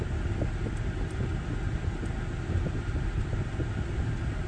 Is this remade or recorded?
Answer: recorded